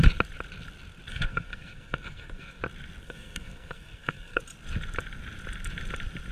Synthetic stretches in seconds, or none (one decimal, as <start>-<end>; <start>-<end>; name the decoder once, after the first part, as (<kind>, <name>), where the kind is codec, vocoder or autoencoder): 1.1-2.6 (codec, SNAC); 3.0-4.4